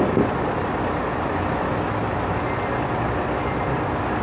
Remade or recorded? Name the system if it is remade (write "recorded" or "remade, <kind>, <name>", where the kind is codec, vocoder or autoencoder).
recorded